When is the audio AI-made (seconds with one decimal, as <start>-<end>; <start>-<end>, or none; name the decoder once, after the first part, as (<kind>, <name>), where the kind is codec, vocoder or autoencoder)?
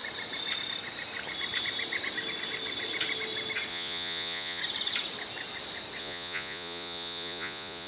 3.7-4.6 (vocoder, Vocos); 6.0-7.9